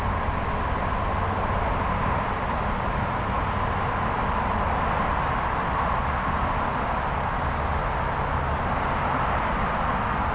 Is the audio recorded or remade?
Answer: recorded